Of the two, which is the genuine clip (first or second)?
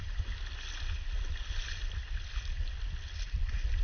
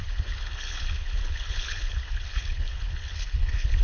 first